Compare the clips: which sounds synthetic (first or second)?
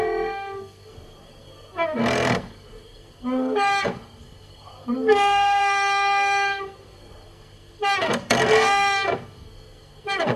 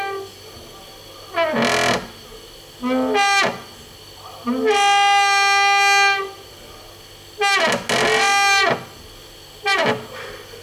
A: first